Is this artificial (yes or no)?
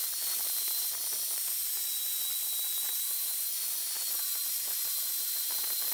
yes